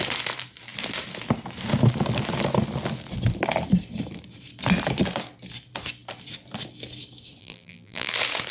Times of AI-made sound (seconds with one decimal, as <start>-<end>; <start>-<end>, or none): 7.4-8.1